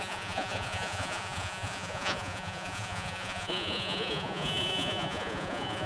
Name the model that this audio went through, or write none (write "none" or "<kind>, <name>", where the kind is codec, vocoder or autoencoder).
vocoder, Vocos